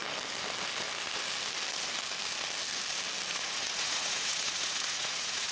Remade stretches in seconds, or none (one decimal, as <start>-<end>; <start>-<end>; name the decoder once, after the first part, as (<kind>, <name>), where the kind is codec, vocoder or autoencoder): 3.3-5.5 (vocoder, Vocos)